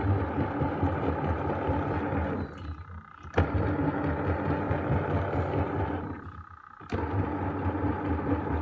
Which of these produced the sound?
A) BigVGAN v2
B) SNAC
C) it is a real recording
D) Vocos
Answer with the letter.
C